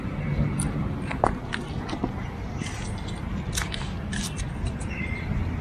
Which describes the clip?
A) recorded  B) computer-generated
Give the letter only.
B